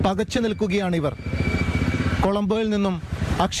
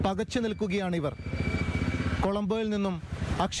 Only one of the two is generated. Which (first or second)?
first